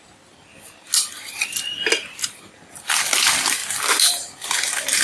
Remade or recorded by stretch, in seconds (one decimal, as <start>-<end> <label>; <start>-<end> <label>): 0.0-5.0 recorded